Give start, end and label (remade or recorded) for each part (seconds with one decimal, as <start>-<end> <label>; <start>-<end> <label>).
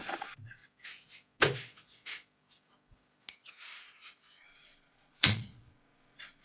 0.0-0.6 remade; 0.6-4.4 recorded; 4.4-6.4 remade